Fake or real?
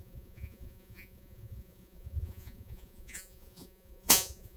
fake